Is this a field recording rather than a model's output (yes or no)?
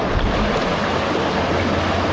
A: yes